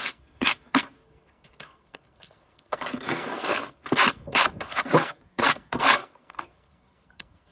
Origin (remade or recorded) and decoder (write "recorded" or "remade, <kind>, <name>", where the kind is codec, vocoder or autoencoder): remade, codec, SNAC